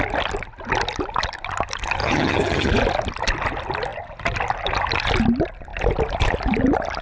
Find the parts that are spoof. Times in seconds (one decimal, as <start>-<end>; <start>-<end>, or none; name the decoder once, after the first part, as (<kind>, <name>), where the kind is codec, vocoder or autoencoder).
2.0-2.7 (vocoder, HiFi-GAN)